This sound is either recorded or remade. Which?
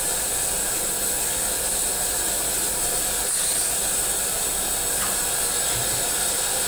recorded